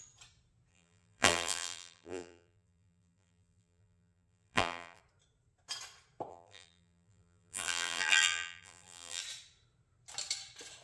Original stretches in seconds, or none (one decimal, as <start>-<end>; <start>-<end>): 0.0-0.7; 5.0-6.3; 9.2-10.8